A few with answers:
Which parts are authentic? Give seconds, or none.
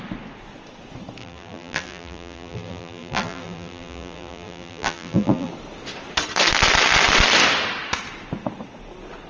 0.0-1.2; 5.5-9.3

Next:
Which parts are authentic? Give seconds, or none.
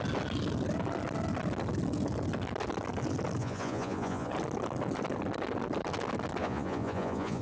0.0-3.4; 4.3-6.4